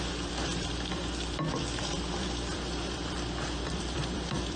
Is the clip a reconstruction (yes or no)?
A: yes